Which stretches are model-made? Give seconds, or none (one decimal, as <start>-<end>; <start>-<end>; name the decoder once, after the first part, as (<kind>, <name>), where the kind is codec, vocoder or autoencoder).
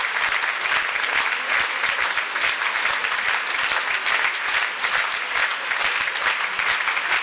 none